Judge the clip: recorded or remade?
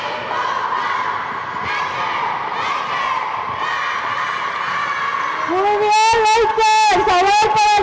recorded